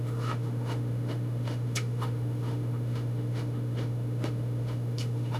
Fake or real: fake